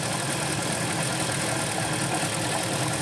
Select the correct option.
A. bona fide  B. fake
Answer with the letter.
A